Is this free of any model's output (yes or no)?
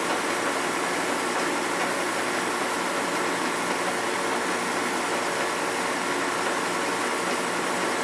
yes